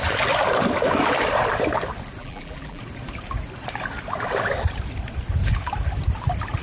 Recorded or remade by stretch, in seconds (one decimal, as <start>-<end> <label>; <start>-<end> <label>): 0.0-2.2 recorded; 2.2-2.8 remade; 2.8-6.6 recorded